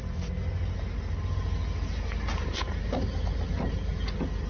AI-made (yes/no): no